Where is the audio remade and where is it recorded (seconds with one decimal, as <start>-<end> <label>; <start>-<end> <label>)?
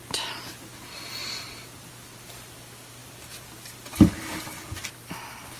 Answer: 0.0-1.2 recorded; 1.2-1.9 remade; 1.9-5.6 recorded